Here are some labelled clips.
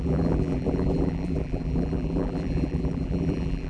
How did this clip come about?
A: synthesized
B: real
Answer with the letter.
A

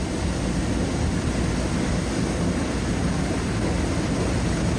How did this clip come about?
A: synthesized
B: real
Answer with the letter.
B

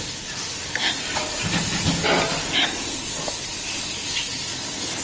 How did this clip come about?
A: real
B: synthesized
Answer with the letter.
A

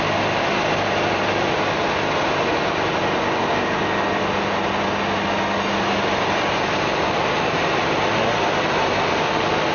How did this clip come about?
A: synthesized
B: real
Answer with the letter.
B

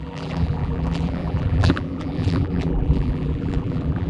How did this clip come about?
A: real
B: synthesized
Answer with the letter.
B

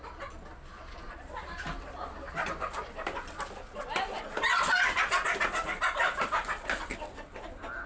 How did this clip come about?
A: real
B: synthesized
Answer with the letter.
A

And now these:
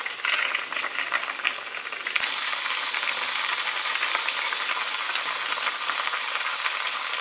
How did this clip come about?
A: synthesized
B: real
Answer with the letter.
A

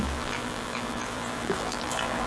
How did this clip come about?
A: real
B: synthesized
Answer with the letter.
B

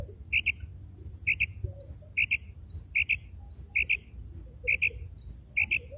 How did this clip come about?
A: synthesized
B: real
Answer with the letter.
B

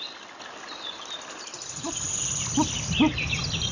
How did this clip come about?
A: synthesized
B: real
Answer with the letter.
B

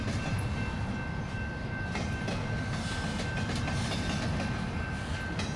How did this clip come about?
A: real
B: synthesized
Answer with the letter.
A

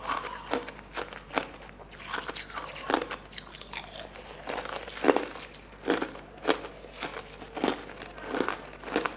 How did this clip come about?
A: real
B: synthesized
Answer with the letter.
A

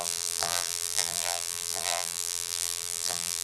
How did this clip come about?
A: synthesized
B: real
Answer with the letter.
A